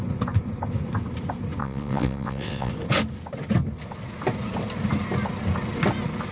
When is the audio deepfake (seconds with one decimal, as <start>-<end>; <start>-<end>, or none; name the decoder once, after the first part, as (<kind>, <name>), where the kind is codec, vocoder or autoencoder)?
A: 1.6-2.7 (vocoder, WaveNeXt)